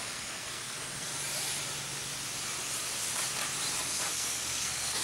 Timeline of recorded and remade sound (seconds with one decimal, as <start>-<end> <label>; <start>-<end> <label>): 0.0-1.1 remade; 1.1-3.8 recorded; 3.8-5.0 remade